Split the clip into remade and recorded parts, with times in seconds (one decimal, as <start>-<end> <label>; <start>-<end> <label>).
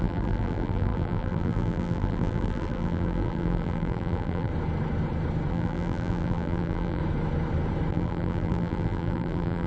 0.0-4.5 remade; 4.5-5.5 recorded; 5.5-7.0 remade; 7.0-7.9 recorded; 7.9-9.7 remade